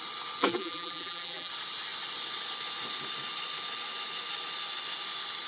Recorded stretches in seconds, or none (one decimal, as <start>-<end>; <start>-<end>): 0.0-0.4; 1.5-5.5